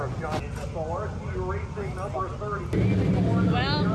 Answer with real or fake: real